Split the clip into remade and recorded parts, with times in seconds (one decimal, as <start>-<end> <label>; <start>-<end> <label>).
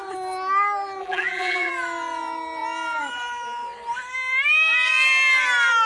0.0-1.0 recorded; 1.0-1.7 remade; 1.7-5.9 recorded